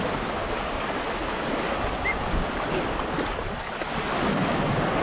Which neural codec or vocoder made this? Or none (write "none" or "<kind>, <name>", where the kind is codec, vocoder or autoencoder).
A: none